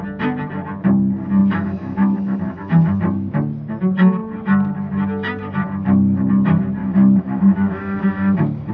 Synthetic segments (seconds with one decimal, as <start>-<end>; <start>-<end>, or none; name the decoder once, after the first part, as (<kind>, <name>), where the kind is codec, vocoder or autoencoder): 1.4-2.7 (autoencoder, DAC-VAE); 6.8-8.7